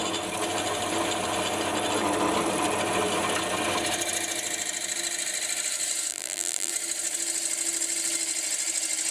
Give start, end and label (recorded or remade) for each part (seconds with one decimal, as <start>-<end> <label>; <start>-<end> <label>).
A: 0.0-6.1 recorded; 6.1-6.7 remade; 6.7-9.1 recorded